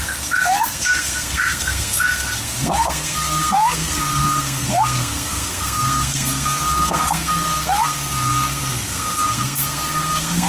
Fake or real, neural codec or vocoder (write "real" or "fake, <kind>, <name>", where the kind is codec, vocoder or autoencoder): fake, codec, SNAC